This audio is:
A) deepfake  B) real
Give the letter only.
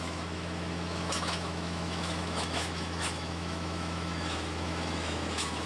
A